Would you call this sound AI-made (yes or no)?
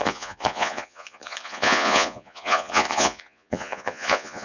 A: yes